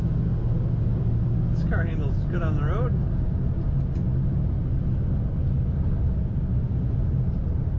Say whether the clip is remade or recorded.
recorded